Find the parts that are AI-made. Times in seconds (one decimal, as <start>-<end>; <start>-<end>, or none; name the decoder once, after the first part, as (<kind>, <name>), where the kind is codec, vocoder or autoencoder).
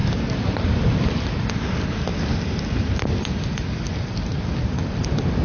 none